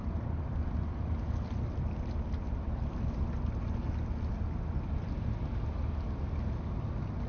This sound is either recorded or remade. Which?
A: recorded